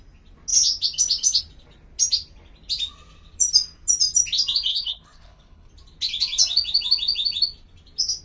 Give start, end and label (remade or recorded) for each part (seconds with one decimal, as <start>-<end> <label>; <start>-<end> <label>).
0.0-4.7 recorded; 4.7-5.7 remade; 5.7-8.2 recorded